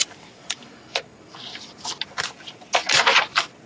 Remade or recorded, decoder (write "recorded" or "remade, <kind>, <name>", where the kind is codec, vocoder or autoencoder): recorded